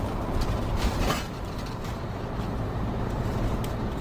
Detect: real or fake fake